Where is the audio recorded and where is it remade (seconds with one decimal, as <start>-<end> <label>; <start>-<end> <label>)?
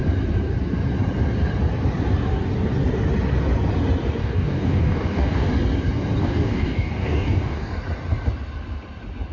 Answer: 0.0-4.2 recorded; 4.2-5.5 remade; 5.5-6.2 recorded; 6.2-7.7 remade; 7.7-9.3 recorded